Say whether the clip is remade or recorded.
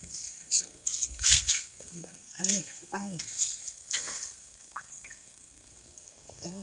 remade